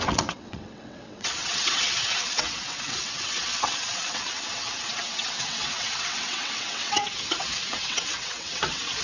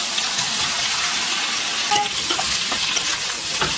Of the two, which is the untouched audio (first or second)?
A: second